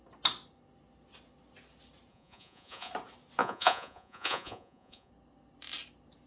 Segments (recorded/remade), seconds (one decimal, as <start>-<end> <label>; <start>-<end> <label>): 0.0-2.1 recorded; 2.1-2.9 remade; 2.9-3.4 recorded; 3.4-5.1 remade; 5.1-6.3 recorded